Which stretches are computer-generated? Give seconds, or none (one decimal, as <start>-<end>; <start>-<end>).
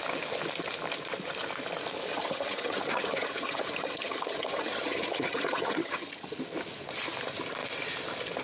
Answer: 2.1-6.4